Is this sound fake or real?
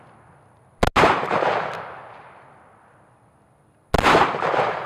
real